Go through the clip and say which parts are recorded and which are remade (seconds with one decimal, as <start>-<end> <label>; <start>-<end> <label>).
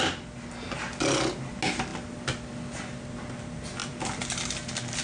0.0-3.8 recorded; 3.8-4.5 remade; 4.5-5.0 recorded